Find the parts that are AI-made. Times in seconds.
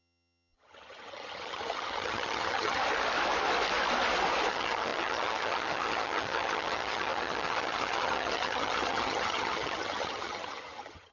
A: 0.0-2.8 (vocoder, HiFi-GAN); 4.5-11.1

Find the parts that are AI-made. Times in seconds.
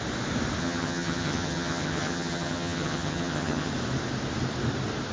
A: 0.6-3.7 (vocoder, HiFi-GAN)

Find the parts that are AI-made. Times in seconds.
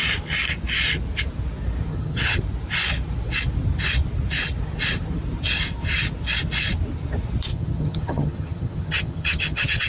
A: 1.9-2.4 (vocoder, HiFi-GAN); 7.5-9.9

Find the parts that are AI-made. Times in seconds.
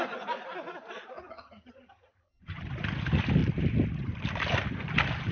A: 1.2-2.6 (vocoder, HiFi-GAN)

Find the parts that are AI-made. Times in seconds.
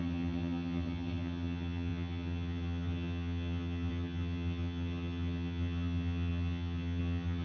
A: 0.0-7.4 (vocoder, HiFi-GAN)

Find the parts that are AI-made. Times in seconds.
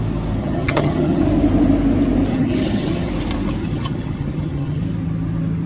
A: 0.4-1.2 (vocoder, HiFi-GAN); 2.3-3.1; 3.6-4.8